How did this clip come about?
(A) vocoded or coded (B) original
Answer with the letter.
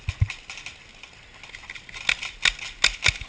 B